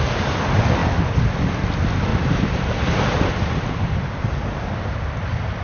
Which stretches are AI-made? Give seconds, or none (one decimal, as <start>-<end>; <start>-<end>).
2.1-4.0